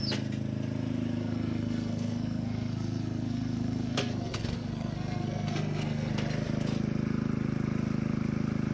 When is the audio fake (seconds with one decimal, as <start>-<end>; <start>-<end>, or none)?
1.2-6.1